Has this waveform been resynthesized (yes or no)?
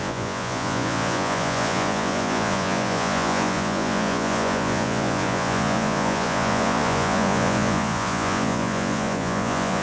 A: yes